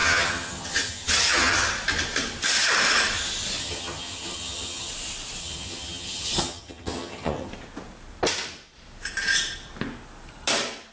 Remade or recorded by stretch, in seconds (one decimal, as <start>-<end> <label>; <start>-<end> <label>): 0.0-1.7 remade; 1.7-3.6 recorded; 3.6-4.9 remade; 4.9-5.4 recorded; 5.4-7.5 remade; 7.5-10.9 recorded